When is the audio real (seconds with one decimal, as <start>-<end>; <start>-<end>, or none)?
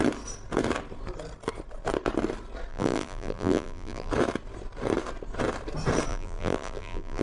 0.0-2.7; 4.1-6.1